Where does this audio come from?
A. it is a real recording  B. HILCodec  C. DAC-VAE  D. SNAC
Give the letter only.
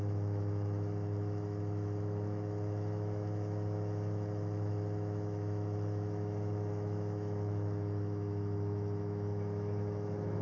C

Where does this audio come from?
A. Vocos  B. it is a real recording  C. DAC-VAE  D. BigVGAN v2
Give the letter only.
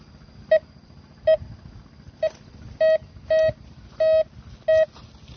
B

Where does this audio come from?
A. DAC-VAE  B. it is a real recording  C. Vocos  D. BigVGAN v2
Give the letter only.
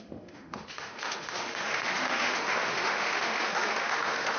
A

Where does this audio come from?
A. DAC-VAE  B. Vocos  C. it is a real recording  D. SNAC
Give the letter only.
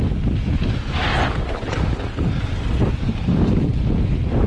C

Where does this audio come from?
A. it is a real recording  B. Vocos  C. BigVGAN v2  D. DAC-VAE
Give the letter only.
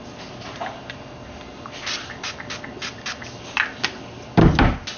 A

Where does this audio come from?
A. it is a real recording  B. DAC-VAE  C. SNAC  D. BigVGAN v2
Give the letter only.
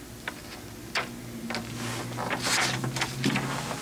A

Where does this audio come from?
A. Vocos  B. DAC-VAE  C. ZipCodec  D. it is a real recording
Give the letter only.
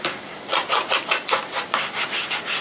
D